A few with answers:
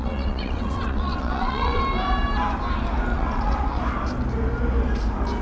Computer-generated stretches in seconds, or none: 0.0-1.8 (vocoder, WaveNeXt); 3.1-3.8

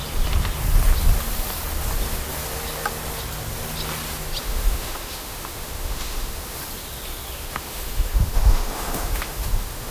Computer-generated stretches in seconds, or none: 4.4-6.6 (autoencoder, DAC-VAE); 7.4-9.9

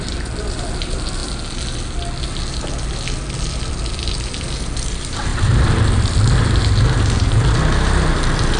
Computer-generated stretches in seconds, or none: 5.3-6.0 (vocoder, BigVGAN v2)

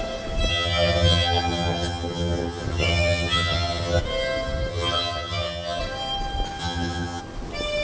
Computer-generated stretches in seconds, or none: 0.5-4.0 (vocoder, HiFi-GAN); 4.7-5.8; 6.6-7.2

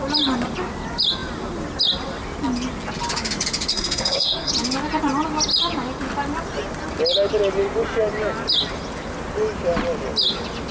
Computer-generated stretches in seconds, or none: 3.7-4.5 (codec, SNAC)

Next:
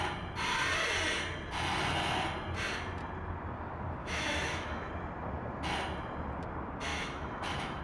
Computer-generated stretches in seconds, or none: 4.0-4.9 (autoencoder, DAC-VAE); 6.9-7.8

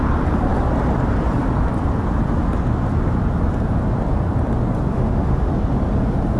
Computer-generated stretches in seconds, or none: 4.9-5.5 (autoencoder, DAC-VAE)